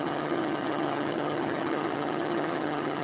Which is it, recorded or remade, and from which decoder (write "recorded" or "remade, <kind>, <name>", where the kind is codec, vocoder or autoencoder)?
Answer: remade, vocoder, HiFi-GAN